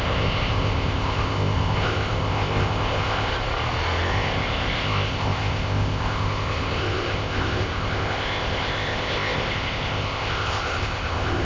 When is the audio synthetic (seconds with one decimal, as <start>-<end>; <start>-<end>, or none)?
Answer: 0.0-3.3; 4.1-11.4